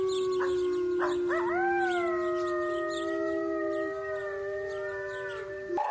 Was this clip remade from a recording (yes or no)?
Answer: no